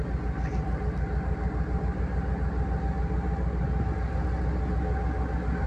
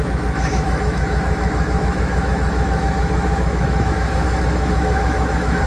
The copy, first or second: second